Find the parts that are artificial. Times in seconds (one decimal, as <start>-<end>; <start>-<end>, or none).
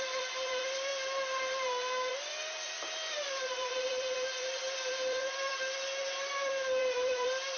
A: 0.0-0.9; 2.1-5.5; 6.3-7.6